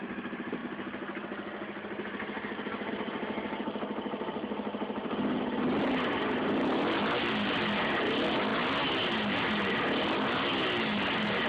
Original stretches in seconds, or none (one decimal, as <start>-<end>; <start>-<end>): 0.0-11.5